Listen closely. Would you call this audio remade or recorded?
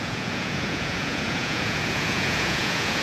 remade